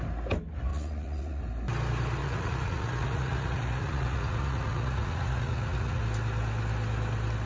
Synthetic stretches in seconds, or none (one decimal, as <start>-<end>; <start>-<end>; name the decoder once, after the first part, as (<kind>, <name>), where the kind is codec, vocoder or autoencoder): 0.7-1.4 (vocoder, Vocos); 2.2-6.0